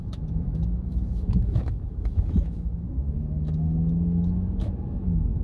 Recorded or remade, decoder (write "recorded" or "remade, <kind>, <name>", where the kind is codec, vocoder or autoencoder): remade, autoencoder, DAC-VAE